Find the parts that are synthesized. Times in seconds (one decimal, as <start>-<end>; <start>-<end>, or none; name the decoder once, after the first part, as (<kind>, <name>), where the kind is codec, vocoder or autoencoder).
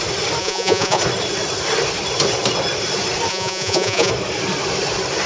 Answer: 0.4-1.0 (vocoder, Vocos); 3.3-4.1